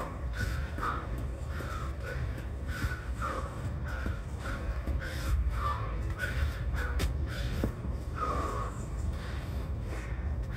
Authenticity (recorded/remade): remade